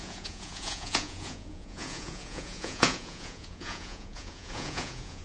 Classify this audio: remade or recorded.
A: remade